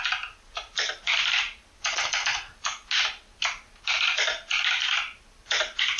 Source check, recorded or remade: recorded